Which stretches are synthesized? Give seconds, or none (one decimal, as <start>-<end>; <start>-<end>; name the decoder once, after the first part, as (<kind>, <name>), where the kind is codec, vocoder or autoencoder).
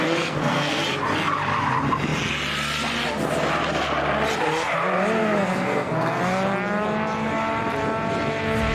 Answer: 0.0-0.8 (codec, SNAC); 5.2-6.2